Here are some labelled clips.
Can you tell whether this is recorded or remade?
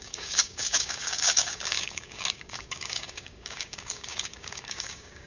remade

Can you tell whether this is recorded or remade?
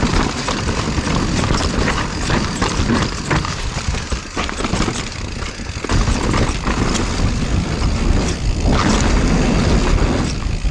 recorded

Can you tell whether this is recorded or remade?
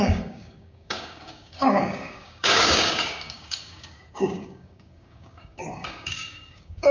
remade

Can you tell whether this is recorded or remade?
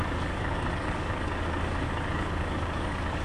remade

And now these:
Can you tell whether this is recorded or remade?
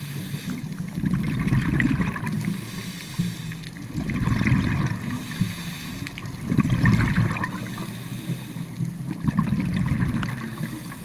recorded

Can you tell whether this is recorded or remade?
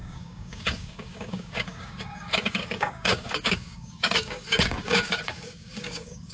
remade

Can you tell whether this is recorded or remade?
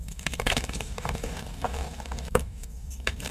remade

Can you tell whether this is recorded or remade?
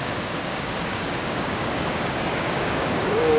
remade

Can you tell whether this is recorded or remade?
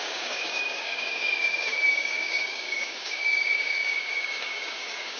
remade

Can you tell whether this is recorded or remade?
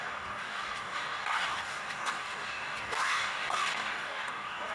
remade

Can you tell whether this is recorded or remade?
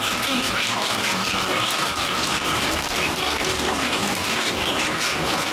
remade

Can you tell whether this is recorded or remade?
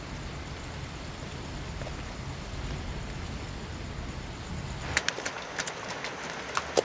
recorded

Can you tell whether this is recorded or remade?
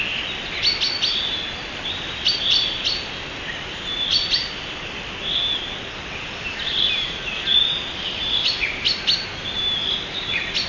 recorded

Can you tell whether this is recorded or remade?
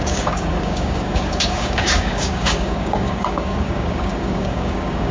remade